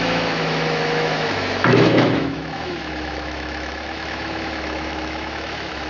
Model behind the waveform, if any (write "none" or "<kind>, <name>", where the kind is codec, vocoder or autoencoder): autoencoder, DAC-VAE